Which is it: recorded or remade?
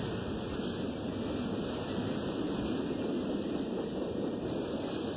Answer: recorded